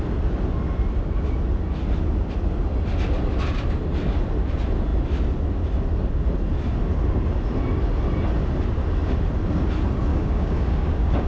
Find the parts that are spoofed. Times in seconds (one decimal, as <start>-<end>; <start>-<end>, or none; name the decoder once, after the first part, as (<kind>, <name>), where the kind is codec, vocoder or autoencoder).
10.1-11.3 (codec, DAC)